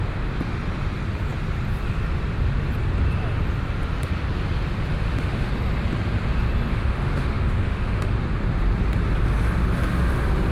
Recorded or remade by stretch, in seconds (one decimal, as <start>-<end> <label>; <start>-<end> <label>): 0.0-4.9 recorded; 4.9-5.5 remade; 5.5-6.7 recorded; 6.7-8.2 remade; 8.2-10.5 recorded